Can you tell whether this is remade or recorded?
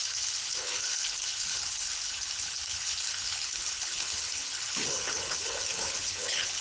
remade